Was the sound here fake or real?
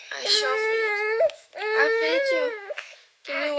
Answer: fake